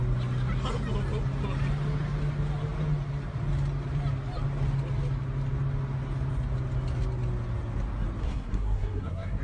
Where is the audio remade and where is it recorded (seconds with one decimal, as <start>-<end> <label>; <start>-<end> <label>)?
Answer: 0.0-8.2 recorded; 8.2-9.4 remade